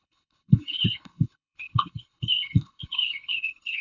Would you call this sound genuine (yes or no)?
no